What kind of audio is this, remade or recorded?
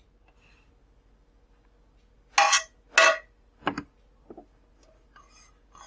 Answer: recorded